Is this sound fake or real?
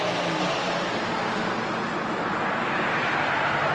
real